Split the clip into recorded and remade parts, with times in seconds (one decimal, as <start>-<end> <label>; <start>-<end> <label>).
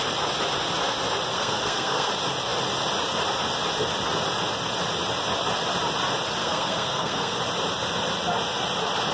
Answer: 0.0-1.3 recorded; 1.3-2.1 remade; 2.1-6.4 recorded; 6.4-7.4 remade; 7.4-9.1 recorded